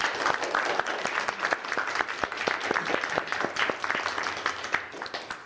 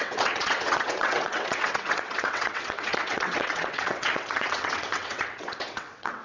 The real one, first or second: first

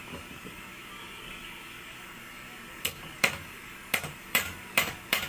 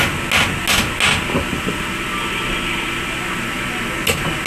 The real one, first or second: second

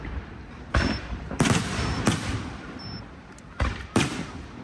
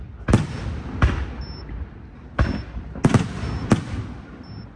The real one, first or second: second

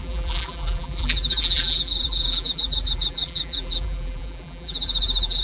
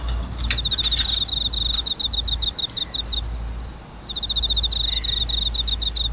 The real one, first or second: second